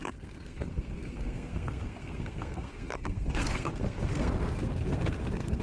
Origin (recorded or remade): remade